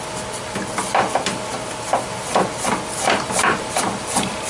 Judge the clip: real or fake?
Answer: fake